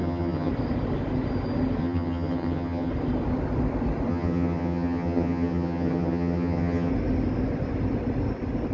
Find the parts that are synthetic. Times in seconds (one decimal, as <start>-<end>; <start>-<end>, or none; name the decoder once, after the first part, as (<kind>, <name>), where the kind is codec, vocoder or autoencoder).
0.0-0.5 (vocoder, HiFi-GAN); 1.8-2.9; 4.1-6.9